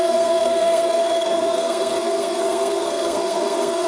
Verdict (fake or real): fake